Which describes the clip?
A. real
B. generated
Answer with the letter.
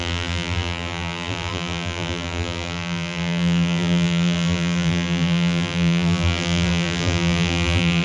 B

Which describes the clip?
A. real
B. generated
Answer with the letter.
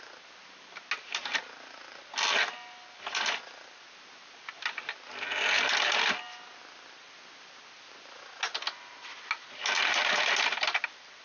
A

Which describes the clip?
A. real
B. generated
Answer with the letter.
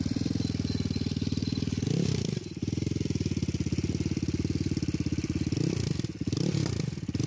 B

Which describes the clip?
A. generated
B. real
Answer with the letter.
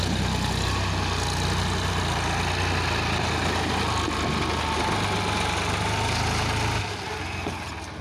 B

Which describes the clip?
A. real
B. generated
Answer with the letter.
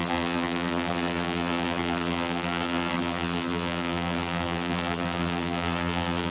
B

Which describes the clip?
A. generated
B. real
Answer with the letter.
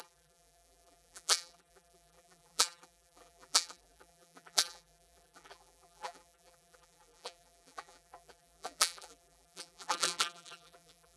A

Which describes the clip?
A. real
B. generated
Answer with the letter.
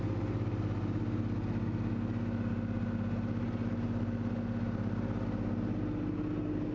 A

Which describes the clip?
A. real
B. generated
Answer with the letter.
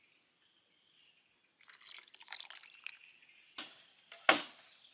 A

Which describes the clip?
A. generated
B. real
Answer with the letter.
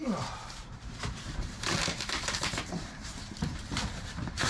A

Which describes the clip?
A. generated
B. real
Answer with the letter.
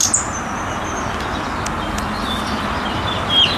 B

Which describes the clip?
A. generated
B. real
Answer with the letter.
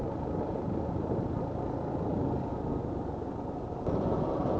B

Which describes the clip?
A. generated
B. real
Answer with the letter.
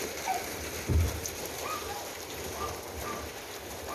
A